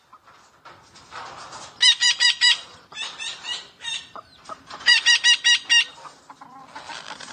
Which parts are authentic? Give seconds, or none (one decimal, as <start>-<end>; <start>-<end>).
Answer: 0.0-2.0; 5.2-7.3